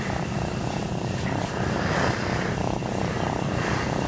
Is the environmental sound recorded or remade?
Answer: recorded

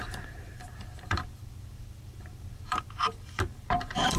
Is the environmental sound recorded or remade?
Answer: remade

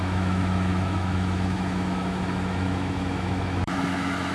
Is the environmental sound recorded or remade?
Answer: remade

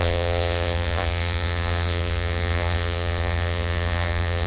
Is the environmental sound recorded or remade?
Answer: remade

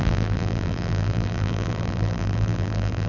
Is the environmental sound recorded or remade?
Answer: remade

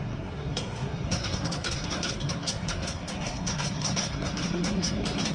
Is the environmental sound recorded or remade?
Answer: remade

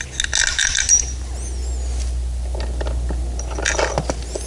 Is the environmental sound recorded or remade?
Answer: recorded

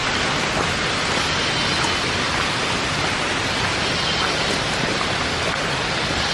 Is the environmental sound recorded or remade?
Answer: recorded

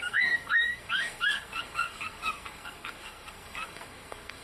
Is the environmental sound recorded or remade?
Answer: remade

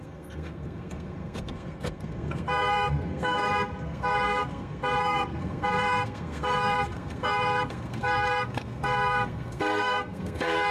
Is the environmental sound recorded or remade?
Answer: remade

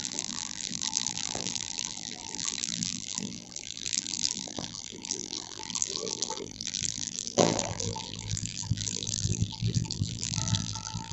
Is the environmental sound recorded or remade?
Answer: remade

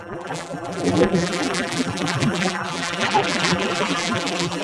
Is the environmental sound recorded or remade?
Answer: remade